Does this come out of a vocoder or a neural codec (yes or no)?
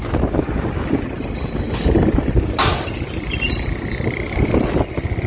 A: no